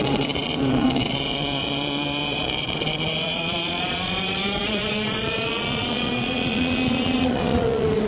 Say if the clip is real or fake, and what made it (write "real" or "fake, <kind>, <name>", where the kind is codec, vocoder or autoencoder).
fake, vocoder, Vocos